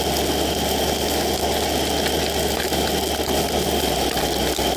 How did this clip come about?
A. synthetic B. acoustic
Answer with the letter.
B